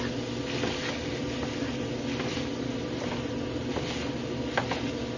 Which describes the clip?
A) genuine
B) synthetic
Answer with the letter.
A